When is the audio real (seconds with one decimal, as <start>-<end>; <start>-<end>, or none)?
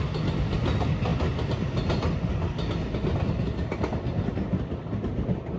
0.0-5.6